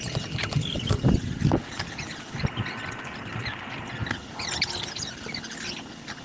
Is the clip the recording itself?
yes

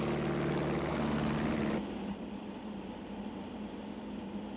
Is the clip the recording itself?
yes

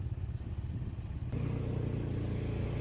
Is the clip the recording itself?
yes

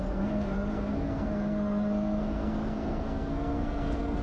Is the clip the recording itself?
no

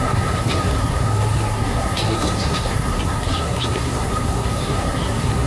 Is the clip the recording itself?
no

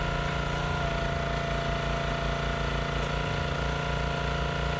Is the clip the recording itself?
yes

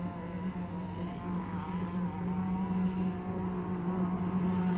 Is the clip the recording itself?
yes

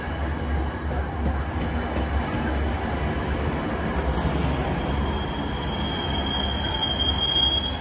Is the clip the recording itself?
yes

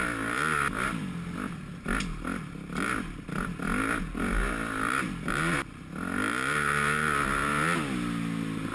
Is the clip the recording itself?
yes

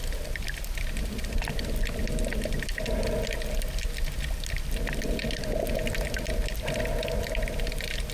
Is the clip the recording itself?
yes